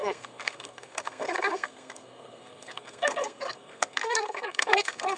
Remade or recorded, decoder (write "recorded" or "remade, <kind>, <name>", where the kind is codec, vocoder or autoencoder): remade, codec, SNAC